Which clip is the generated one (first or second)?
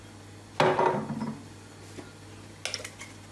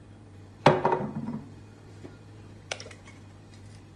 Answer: second